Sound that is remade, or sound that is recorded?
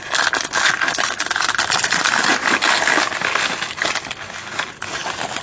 recorded